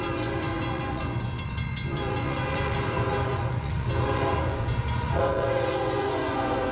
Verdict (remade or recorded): remade